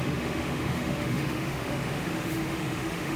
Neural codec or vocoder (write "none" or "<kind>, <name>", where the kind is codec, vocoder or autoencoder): autoencoder, DAC-VAE